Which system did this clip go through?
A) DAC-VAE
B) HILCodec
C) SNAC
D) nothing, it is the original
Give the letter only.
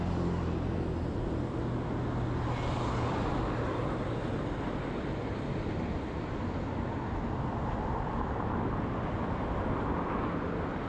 D